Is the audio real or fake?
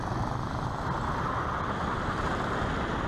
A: real